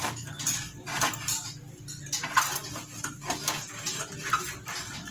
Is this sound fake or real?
real